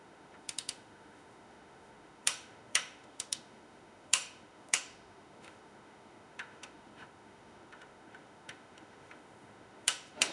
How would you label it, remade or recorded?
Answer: remade